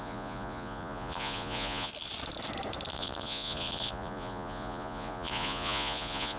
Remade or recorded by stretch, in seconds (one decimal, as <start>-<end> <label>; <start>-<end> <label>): 0.0-1.9 remade; 1.9-2.9 recorded; 2.9-6.4 remade